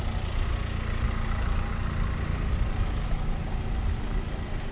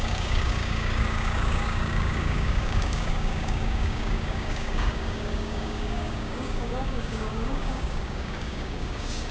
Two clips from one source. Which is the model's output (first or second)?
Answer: second